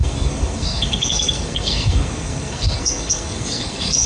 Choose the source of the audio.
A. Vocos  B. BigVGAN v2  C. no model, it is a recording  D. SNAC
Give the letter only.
D